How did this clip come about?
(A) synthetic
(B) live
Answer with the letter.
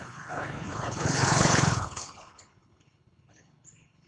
A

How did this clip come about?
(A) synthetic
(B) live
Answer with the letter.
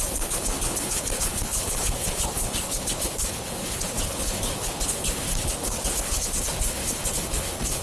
A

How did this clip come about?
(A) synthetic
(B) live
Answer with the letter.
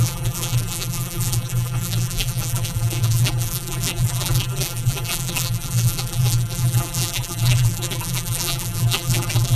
A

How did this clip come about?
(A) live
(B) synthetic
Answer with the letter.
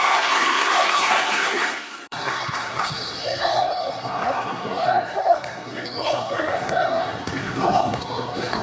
B